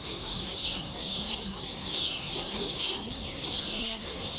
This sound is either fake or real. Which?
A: fake